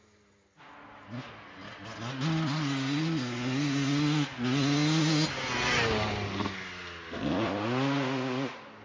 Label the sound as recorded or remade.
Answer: recorded